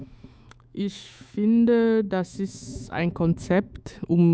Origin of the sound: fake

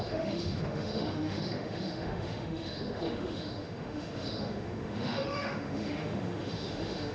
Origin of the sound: fake